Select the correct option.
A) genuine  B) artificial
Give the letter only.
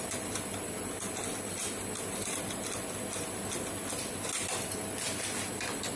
A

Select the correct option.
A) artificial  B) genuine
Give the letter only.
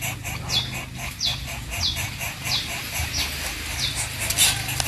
B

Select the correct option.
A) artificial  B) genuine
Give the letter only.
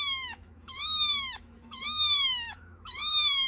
A